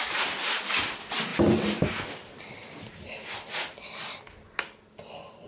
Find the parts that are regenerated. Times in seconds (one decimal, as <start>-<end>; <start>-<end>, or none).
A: none